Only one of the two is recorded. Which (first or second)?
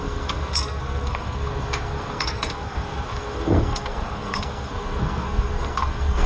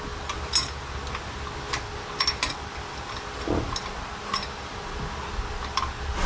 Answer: second